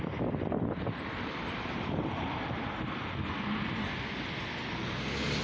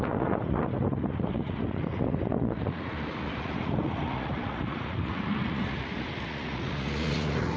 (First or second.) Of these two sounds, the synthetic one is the second